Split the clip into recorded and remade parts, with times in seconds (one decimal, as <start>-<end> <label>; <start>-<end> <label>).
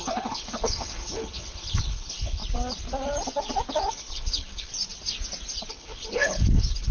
0.0-2.4 remade; 2.4-3.9 recorded; 3.9-4.7 remade; 4.7-5.7 recorded; 5.7-6.9 remade